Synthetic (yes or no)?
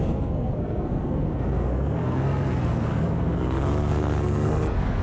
yes